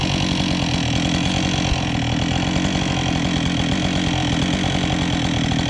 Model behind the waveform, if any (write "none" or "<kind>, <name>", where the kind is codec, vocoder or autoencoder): none